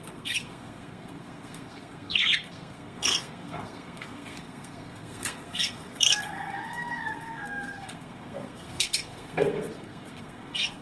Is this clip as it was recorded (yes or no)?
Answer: no